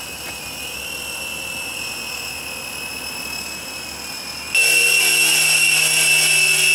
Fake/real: real